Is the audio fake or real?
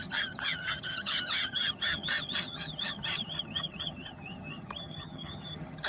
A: fake